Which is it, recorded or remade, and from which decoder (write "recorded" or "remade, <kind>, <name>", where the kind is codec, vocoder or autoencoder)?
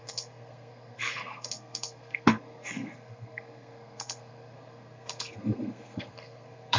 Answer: remade, codec, SNAC